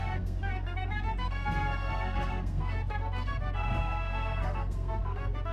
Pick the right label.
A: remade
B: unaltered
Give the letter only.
A